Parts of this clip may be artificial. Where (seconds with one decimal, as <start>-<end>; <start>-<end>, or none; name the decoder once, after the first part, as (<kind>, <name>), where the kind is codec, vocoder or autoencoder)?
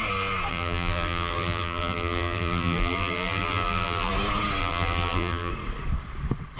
0.5-4.1 (vocoder, BigVGAN v2); 4.6-5.5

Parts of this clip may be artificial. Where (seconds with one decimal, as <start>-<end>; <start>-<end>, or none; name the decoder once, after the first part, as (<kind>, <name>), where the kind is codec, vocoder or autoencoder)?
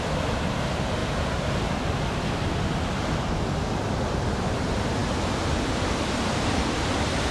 1.0-1.7 (vocoder, BigVGAN v2)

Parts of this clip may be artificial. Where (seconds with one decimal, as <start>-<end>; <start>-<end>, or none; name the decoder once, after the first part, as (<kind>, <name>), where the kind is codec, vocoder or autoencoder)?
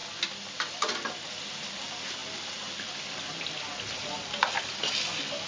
2.2-2.9 (vocoder, BigVGAN v2)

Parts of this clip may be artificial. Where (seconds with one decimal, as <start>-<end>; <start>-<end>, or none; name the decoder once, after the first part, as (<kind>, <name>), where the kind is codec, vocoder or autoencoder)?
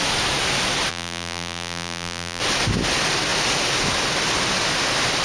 0.9-2.4 (vocoder, BigVGAN v2)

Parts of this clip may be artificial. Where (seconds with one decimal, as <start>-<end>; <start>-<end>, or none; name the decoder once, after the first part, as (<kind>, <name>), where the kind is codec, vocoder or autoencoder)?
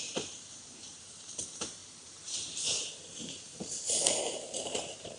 0.0-5.2 (vocoder, BigVGAN v2)